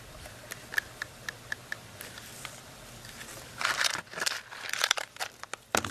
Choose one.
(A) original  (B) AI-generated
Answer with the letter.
B